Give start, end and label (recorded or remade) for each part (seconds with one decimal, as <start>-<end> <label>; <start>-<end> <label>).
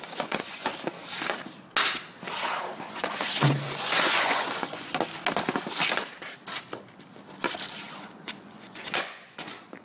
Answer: 0.0-0.7 remade; 0.7-2.8 recorded; 2.8-4.9 remade; 4.9-7.7 recorded; 7.7-9.8 remade